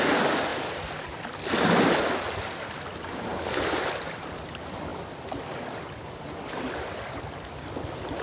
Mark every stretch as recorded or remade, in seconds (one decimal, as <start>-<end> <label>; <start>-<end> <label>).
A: 0.0-8.2 recorded

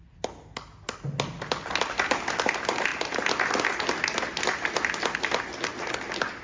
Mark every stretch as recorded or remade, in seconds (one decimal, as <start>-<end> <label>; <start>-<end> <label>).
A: 0.0-6.4 recorded

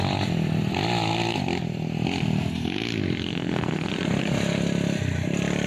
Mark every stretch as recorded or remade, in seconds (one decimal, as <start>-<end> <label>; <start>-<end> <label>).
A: 0.0-3.3 recorded; 3.3-3.9 remade; 3.9-5.7 recorded

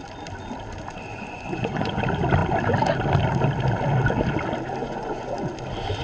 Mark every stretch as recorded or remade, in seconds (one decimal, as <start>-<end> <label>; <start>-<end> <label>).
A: 0.0-1.1 recorded; 1.1-2.0 remade; 2.0-4.8 recorded; 4.8-5.3 remade; 5.3-6.0 recorded

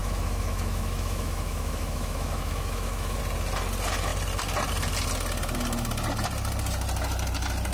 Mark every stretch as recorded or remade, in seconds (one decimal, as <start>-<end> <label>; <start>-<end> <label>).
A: 0.0-3.2 remade; 3.2-7.7 recorded